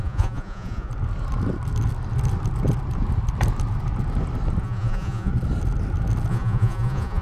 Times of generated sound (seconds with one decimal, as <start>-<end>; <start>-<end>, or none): 0.0-0.9; 4.6-5.3; 6.3-7.2